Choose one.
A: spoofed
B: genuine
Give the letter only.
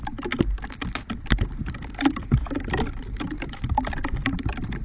B